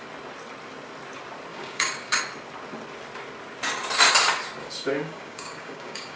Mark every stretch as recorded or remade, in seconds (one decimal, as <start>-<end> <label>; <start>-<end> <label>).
0.0-1.5 recorded; 1.5-2.2 remade; 2.2-4.6 recorded; 4.6-6.2 remade